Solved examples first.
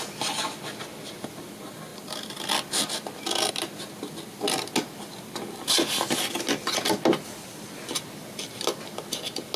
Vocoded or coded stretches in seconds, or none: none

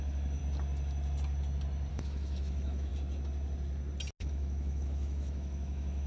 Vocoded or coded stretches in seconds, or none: 0.0-0.4 (autoencoder, DAC-VAE); 1.9-2.9; 4.2-6.1

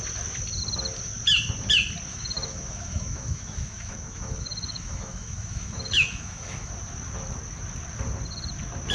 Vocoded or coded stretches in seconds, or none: 2.1-6.7 (autoencoder, DAC-VAE)

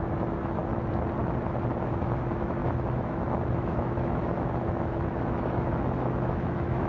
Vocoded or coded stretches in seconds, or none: 0.0-0.6 (autoencoder, DAC-VAE); 1.8-6.9